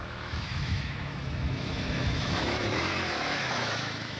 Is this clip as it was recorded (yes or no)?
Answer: no